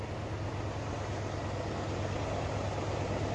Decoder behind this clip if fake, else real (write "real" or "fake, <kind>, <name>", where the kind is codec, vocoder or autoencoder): real